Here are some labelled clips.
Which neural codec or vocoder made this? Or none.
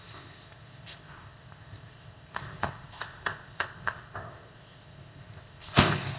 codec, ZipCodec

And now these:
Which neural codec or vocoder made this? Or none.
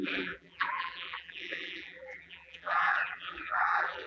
vocoder, BigVGAN v2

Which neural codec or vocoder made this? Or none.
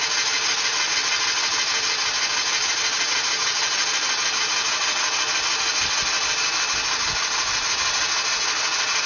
none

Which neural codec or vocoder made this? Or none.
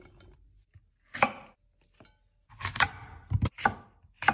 none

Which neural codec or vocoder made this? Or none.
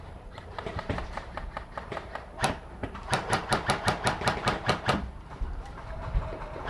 vocoder, BigVGAN v2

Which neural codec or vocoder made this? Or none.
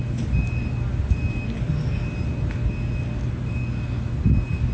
none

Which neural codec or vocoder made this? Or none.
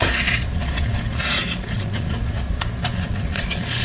vocoder, Vocos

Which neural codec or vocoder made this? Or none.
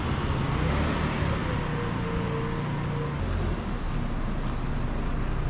none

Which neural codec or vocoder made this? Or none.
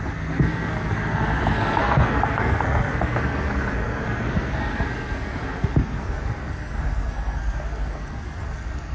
codec, SNAC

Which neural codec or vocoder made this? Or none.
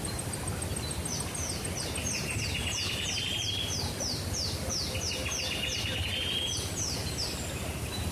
none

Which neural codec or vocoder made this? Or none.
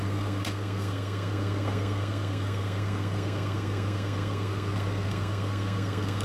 codec, SNAC